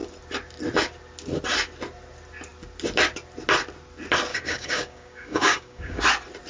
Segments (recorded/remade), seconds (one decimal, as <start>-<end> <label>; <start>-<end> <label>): 0.0-4.3 recorded; 4.3-6.0 remade; 6.0-6.5 recorded